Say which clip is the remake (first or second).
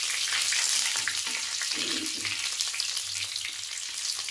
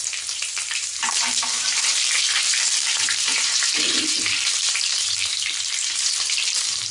second